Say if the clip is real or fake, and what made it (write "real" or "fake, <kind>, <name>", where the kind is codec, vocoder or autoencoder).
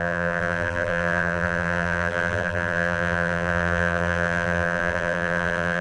fake, vocoder, BigVGAN v2